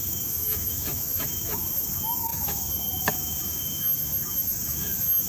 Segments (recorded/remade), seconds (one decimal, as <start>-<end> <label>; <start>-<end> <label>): 0.0-5.3 remade